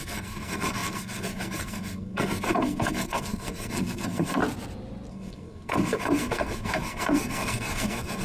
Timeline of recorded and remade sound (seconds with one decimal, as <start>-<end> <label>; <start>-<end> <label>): 0.0-4.4 remade; 4.4-5.1 recorded; 5.1-8.2 remade